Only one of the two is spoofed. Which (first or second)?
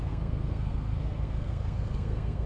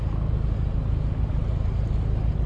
first